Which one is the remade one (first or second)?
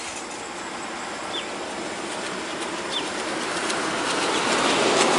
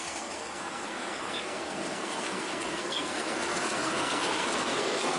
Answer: second